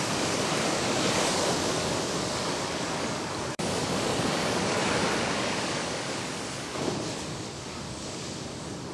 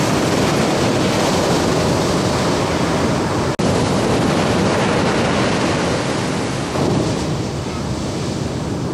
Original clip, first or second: second